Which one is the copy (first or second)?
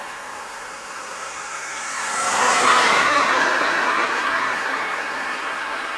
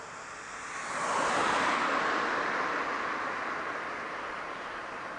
first